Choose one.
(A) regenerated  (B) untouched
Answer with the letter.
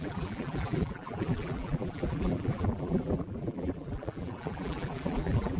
A